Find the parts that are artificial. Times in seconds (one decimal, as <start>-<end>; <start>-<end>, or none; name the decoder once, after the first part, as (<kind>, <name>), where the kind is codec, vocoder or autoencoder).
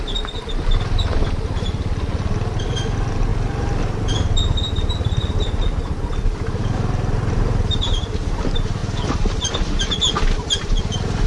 none